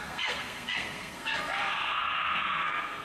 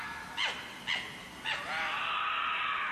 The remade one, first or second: first